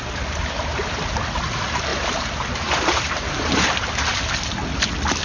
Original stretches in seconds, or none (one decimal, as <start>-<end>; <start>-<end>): 0.0-1.9; 3.9-5.2

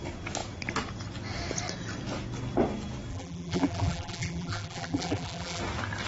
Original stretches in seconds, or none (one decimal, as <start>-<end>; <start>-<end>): 0.0-3.1; 5.6-6.1